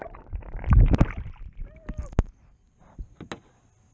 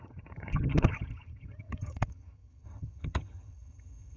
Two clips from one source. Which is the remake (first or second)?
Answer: second